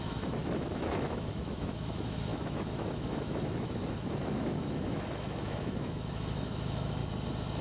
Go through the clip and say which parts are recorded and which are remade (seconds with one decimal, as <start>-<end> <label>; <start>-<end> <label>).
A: 0.0-7.0 remade; 7.0-7.6 recorded